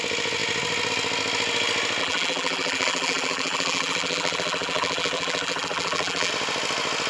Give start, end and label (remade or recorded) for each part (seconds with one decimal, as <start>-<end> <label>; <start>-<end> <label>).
0.0-2.0 recorded; 2.0-6.3 remade; 6.3-7.1 recorded